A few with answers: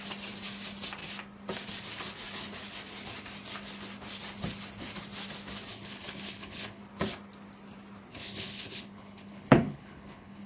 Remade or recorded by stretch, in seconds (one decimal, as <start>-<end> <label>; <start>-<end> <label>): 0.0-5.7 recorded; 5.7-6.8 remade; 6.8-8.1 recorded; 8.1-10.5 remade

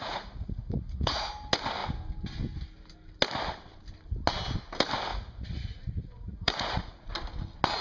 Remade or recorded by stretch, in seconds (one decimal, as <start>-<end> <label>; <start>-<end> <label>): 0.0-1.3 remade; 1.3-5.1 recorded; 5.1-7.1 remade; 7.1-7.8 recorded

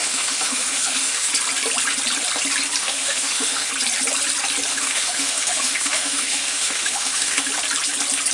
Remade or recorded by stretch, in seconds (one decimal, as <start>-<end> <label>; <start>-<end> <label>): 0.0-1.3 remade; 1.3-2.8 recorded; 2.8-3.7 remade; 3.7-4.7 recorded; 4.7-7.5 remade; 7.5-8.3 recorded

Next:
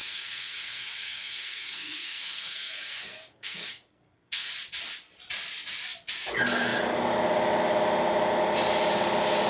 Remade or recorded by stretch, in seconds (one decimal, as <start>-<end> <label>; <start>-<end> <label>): 0.0-4.5 remade; 4.5-9.5 recorded

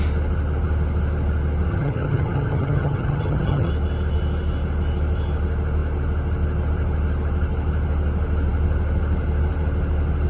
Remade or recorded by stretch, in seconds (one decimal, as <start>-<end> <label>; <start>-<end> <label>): 0.0-1.7 recorded; 1.7-3.7 remade; 3.7-10.3 recorded

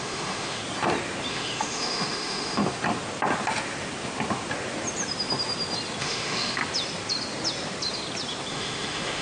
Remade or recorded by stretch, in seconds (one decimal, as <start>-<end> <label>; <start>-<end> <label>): 0.0-0.6 remade; 0.6-1.3 recorded; 1.3-2.6 remade; 2.6-6.0 recorded; 6.0-6.6 remade; 6.6-8.5 recorded; 8.5-9.2 remade

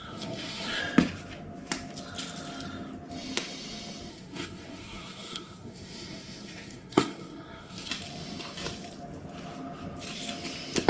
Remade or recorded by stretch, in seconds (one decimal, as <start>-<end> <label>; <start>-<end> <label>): 0.0-0.8 remade; 0.8-4.1 recorded; 4.1-7.9 remade; 7.9-10.9 recorded

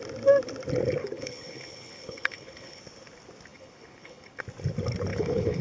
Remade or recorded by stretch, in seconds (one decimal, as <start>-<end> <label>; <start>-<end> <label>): 0.0-1.0 recorded; 1.0-2.8 remade; 2.8-3.5 recorded; 3.5-4.4 remade; 4.4-5.1 recorded; 5.1-5.6 remade